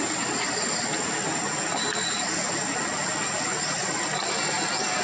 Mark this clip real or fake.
real